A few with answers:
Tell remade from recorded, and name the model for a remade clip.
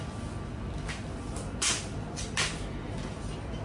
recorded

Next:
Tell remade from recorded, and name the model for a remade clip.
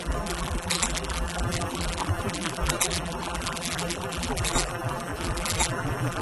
remade, vocoder, BigVGAN v2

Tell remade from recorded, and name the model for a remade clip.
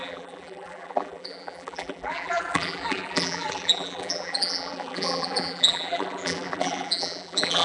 remade, vocoder, BigVGAN v2